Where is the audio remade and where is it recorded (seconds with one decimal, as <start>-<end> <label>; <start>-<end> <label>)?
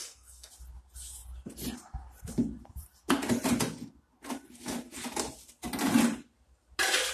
0.0-0.5 remade; 0.5-7.1 recorded